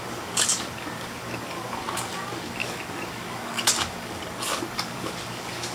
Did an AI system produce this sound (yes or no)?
yes